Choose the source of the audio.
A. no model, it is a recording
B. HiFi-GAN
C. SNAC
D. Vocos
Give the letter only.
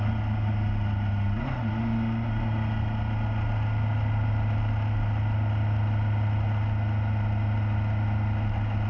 A